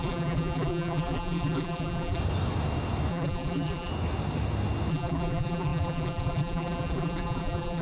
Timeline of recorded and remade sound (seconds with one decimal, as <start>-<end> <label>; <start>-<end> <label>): 0.0-2.2 remade; 2.2-3.1 recorded; 3.1-3.9 remade; 3.9-4.9 recorded; 4.9-7.8 remade